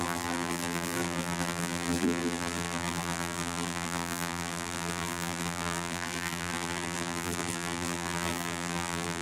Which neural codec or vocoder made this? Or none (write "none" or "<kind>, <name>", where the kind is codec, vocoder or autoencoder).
vocoder, BigVGAN v2